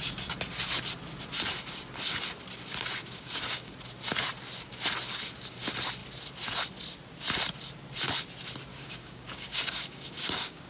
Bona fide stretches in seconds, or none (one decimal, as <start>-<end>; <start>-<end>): 0.0-3.0; 3.7-8.7